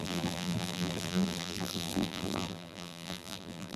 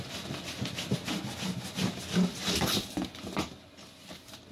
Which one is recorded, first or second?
second